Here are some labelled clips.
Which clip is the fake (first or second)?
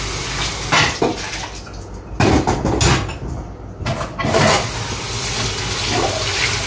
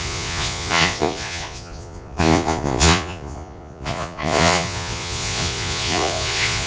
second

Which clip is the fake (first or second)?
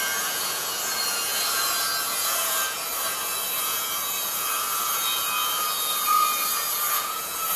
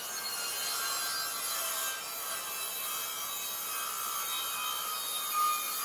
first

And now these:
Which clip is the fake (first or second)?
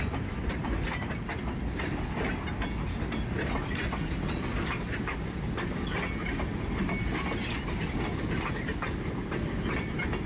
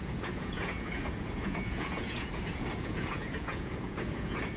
second